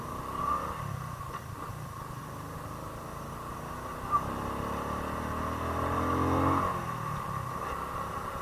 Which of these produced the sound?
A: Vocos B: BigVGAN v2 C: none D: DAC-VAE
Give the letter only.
C